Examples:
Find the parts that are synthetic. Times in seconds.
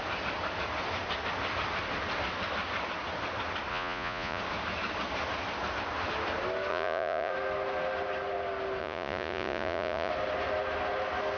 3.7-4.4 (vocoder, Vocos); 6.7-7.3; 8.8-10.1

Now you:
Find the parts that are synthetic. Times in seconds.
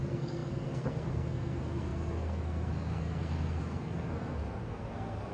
0.0-5.3 (codec, SNAC)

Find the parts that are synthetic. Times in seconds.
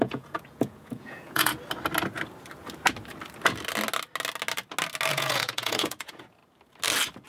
0.0-1.5 (vocoder, Vocos); 5.1-6.4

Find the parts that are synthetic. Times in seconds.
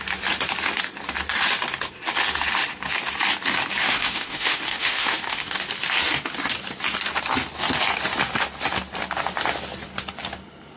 3.8-5.5 (autoencoder, DAC-VAE)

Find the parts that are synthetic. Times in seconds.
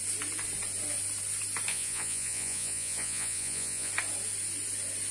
1.7-3.9 (vocoder, Vocos)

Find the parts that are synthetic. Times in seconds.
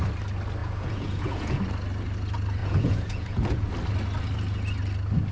0.6-1.6 (vocoder, Vocos); 2.6-3.7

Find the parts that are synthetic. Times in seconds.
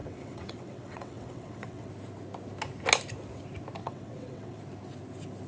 0.0-1.9 (vocoder, WaveNeXt); 3.8-4.6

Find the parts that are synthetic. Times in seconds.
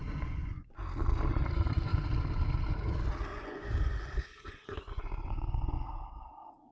0.0-0.7 (vocoder, Vocos); 3.3-6.1